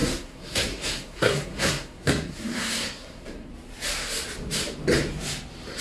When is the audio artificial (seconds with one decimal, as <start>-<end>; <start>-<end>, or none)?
0.0-3.5